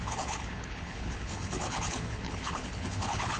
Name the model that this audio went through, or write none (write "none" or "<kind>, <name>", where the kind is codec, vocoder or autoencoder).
codec, HILCodec